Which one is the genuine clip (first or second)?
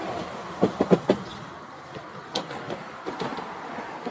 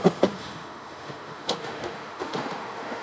first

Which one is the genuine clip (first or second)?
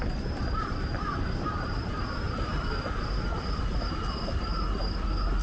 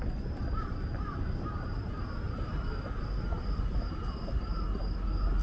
second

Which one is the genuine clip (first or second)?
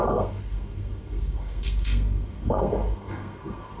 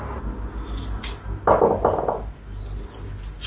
second